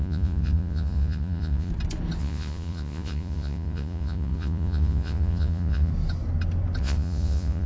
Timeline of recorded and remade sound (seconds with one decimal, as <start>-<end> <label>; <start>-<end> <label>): 0.0-1.7 remade; 1.7-2.2 recorded; 2.2-5.9 remade; 5.9-6.8 recorded; 6.8-7.7 remade